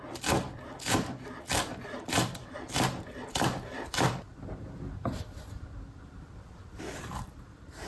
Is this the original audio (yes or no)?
no